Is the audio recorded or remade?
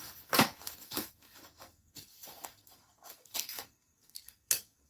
remade